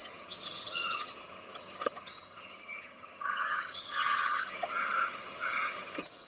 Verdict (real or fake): fake